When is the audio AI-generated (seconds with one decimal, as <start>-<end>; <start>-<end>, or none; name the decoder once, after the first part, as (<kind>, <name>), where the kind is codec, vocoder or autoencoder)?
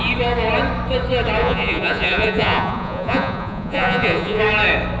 1.4-4.4 (vocoder, Vocos)